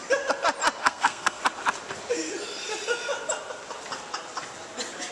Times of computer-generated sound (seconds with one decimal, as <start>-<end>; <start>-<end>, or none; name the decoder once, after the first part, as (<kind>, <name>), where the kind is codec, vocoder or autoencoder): 0.8-1.4 (codec, SNAC)